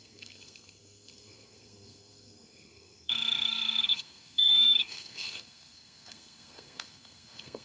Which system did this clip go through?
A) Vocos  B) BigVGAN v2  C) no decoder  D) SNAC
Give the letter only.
D